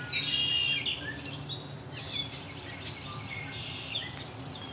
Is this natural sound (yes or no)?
yes